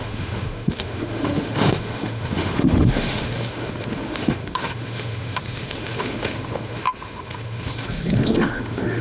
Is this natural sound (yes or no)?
no